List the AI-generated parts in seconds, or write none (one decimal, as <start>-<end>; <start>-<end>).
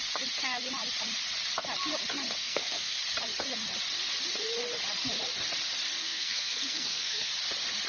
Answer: 2.4-3.0; 6.0-7.3